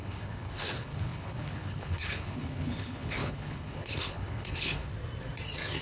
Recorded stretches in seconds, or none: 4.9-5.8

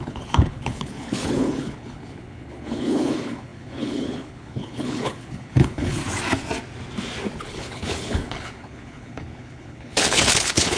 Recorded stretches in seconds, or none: 6.0-7.4

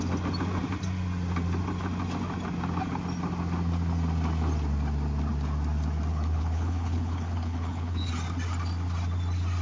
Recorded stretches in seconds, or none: 0.0-6.1; 8.1-9.6

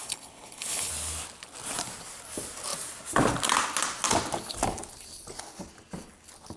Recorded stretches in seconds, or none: 0.9-6.6

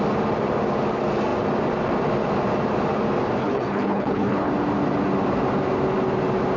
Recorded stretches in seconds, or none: 0.0-3.4; 4.5-6.6

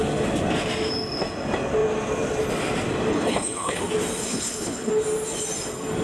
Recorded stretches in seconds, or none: 0.0-3.1; 3.8-4.3; 4.9-6.0